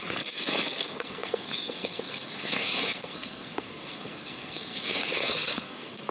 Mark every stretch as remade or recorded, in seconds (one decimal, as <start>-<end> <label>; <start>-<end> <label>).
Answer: 0.0-6.1 remade